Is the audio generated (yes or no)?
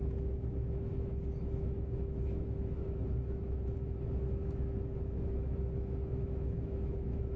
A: yes